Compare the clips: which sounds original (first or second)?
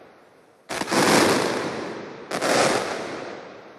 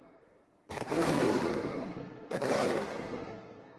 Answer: first